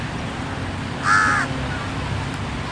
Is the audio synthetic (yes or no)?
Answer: no